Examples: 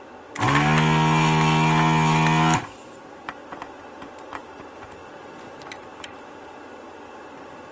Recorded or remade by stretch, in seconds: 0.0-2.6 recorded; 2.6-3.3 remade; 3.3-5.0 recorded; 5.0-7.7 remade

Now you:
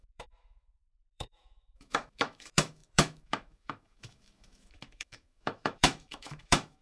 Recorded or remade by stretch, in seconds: 0.0-6.8 remade